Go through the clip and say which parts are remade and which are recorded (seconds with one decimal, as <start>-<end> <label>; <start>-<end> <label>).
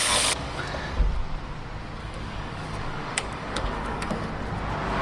0.0-0.6 remade; 0.6-2.0 recorded; 2.0-4.3 remade; 4.3-5.0 recorded